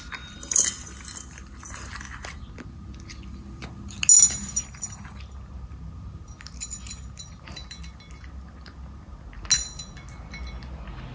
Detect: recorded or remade recorded